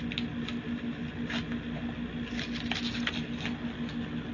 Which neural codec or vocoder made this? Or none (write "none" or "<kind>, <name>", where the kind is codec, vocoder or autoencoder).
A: none